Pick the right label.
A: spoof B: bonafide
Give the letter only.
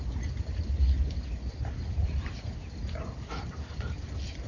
B